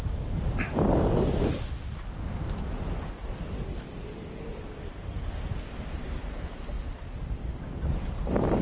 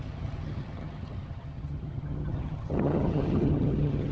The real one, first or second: first